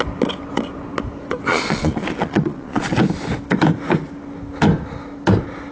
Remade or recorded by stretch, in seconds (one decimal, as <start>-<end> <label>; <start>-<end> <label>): 0.0-1.5 recorded; 1.5-3.0 remade; 3.0-5.7 recorded